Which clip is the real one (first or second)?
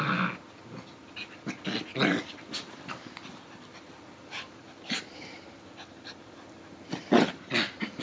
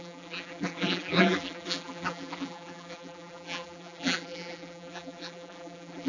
first